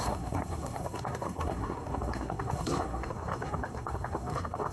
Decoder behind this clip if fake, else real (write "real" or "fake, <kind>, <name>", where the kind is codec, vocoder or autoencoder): fake, codec, SNAC